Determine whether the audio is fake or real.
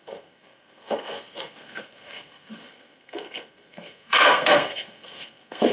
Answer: fake